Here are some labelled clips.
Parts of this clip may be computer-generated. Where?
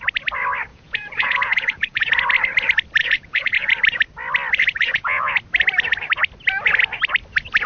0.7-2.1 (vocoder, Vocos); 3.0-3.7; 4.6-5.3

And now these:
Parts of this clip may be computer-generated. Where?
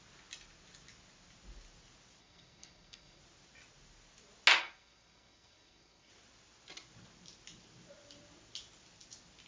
2.2-3.2 (codec, SNAC); 4.6-6.1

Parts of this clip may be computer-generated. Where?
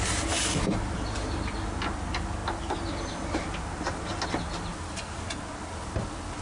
none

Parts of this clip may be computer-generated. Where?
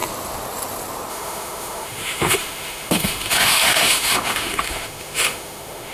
1.1-5.9 (autoencoder, DAC-VAE)